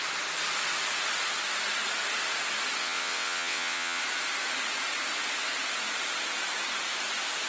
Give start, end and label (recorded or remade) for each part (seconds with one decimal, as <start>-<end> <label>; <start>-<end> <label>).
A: 0.0-2.8 recorded; 2.8-4.0 remade; 4.0-7.5 recorded